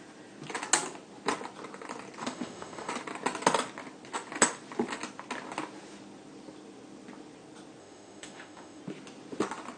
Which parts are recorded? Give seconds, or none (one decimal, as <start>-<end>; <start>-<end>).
0.0-2.2; 2.9-7.8; 8.8-9.8